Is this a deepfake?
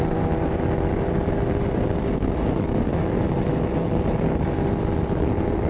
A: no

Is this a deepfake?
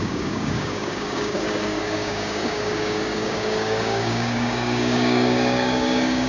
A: yes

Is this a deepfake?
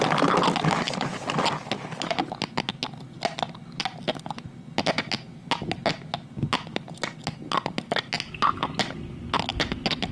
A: no